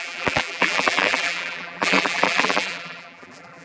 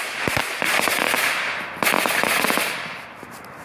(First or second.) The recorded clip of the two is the second